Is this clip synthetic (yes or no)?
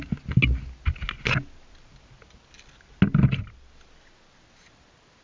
no